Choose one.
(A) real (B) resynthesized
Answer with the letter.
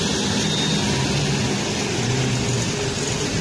A